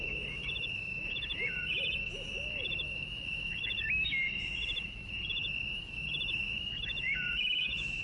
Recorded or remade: remade